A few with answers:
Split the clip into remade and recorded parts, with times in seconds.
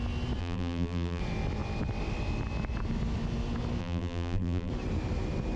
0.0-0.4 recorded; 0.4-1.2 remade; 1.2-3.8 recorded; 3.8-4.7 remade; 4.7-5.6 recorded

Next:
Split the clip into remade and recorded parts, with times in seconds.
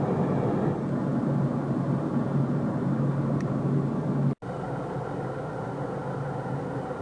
0.0-7.0 recorded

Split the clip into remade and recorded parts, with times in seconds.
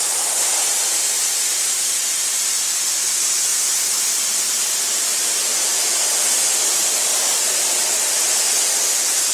0.0-3.5 recorded; 3.5-4.6 remade; 4.6-6.8 recorded; 6.8-7.8 remade; 7.8-9.3 recorded